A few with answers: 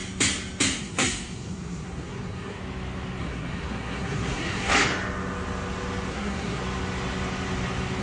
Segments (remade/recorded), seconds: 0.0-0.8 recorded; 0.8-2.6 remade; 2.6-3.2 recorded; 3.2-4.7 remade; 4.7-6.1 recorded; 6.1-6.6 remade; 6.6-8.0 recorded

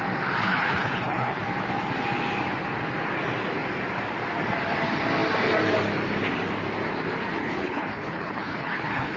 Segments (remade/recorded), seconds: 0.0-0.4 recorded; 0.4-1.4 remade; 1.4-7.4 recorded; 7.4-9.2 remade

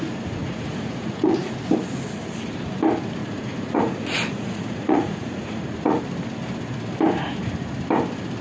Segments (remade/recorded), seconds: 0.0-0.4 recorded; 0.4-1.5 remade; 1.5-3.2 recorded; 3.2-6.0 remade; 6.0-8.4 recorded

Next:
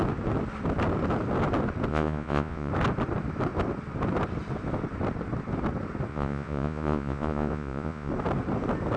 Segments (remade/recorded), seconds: 0.0-1.9 recorded; 1.9-2.7 remade; 2.7-6.1 recorded; 6.1-8.1 remade; 8.1-9.0 recorded